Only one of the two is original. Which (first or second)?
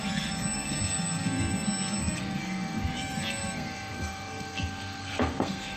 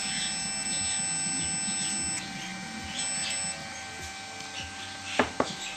second